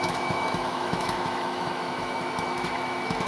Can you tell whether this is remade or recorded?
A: remade